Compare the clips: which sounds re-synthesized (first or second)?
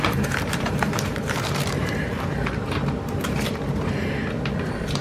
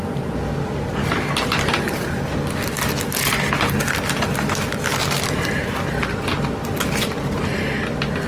first